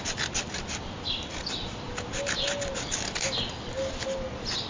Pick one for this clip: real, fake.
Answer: real